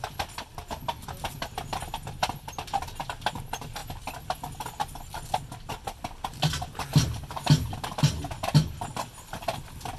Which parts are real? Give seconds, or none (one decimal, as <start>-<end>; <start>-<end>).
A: 0.0-10.0